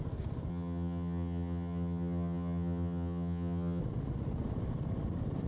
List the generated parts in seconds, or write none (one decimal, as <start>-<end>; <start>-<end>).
0.5-3.8